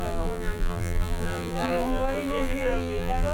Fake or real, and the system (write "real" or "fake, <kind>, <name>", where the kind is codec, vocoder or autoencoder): fake, vocoder, BigVGAN v2